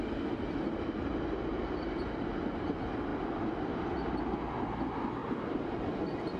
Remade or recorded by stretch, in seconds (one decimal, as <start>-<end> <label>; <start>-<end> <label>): 0.0-3.1 recorded; 3.1-4.2 remade; 4.2-5.2 recorded; 5.2-6.0 remade; 6.0-6.4 recorded